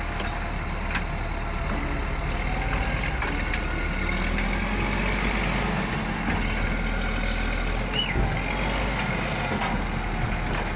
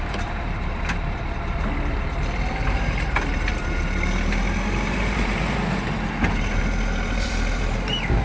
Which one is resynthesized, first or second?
second